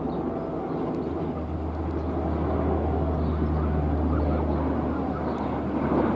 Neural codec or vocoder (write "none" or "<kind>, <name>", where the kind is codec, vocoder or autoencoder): none